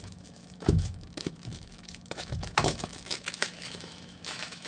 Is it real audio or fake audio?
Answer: fake